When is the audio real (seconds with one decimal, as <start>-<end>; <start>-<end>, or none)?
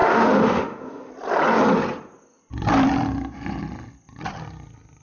1.1-5.0